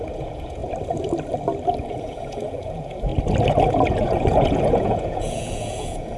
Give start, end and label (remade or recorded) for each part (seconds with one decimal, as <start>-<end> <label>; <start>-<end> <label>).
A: 0.0-0.6 remade; 0.6-1.8 recorded; 1.8-3.1 remade; 3.1-3.7 recorded; 3.7-6.2 remade